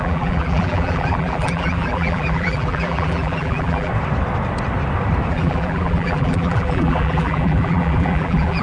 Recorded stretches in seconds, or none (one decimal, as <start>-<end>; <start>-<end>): 3.9-5.3

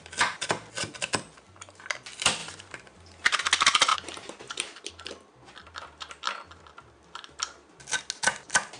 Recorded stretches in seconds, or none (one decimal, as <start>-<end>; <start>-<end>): 0.0-2.4; 3.4-3.9; 4.9-5.6; 6.4-8.8

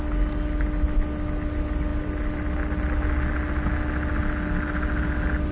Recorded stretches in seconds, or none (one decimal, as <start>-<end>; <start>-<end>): 0.0-5.5

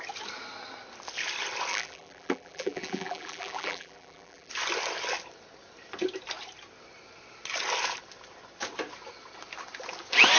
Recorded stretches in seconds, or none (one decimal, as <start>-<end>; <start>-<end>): 0.0-1.7; 4.5-10.4